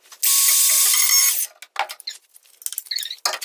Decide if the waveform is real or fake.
real